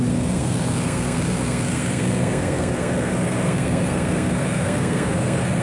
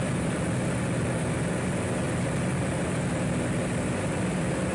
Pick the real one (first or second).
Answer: second